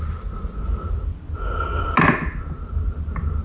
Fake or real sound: real